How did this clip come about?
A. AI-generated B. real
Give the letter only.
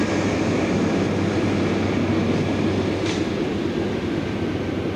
B